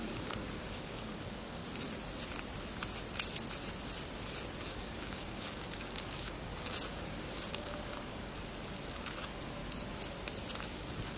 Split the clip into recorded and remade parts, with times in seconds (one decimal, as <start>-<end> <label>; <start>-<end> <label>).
0.0-1.6 remade; 1.6-4.6 recorded; 4.6-6.5 remade; 6.5-7.5 recorded; 7.5-9.6 remade; 9.6-10.6 recorded; 10.6-11.2 remade

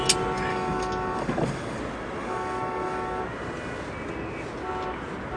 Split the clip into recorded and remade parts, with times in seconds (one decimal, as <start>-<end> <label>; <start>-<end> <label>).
0.0-0.5 recorded; 0.5-1.8 remade; 1.8-2.2 recorded; 2.2-3.2 remade; 3.2-5.4 recorded

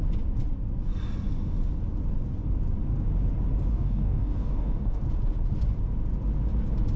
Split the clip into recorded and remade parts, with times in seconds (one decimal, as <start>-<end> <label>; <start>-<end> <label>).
0.0-3.7 recorded; 3.7-5.0 remade; 5.0-7.0 recorded

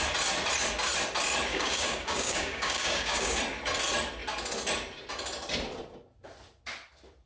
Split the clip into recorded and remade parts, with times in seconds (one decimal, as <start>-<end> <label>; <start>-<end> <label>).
0.0-1.5 recorded; 1.5-3.4 remade; 3.4-7.3 recorded

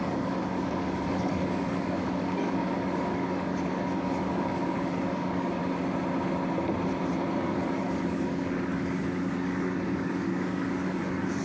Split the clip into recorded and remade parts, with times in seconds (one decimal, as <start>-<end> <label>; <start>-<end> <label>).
0.0-5.6 remade; 5.6-7.3 recorded; 7.3-11.4 remade

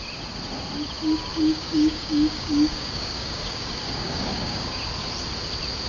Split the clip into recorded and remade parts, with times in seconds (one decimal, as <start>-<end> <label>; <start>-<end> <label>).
0.0-1.3 recorded; 1.3-4.8 remade; 4.8-5.9 recorded

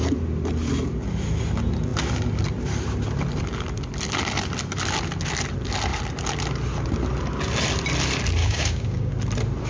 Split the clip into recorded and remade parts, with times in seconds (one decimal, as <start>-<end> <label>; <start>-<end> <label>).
0.0-8.4 recorded; 8.4-9.1 remade; 9.1-9.7 recorded

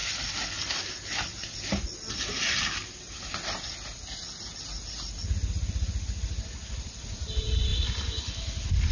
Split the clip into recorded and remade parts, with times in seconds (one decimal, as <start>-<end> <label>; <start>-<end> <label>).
0.0-8.9 recorded